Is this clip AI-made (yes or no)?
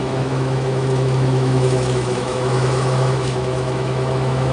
yes